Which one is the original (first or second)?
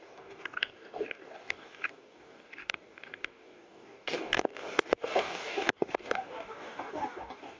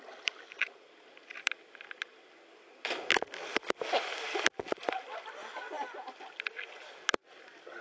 second